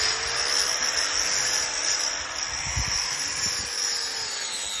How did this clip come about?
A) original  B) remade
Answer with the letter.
A